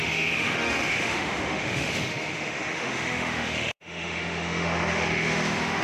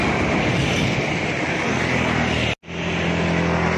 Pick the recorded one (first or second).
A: second